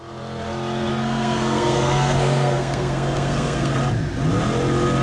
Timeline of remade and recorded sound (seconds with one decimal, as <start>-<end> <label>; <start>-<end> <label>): 0.0-0.9 recorded; 0.9-3.8 remade; 3.8-5.0 recorded